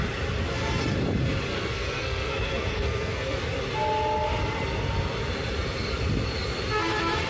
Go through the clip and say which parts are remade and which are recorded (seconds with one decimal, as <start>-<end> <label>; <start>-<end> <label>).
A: 0.0-1.5 recorded; 1.5-3.4 remade; 3.4-7.3 recorded